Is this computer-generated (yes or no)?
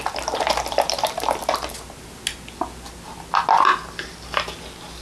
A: no